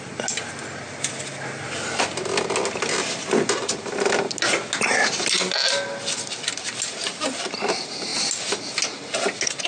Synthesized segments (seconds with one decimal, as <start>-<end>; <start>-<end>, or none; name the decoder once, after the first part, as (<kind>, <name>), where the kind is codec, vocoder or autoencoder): none